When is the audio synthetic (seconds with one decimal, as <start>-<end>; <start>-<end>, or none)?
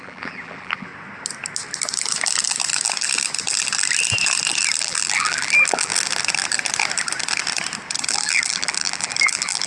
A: 0.0-0.9; 4.8-5.9; 8.1-9.7